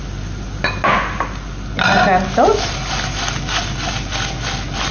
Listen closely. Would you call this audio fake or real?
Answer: real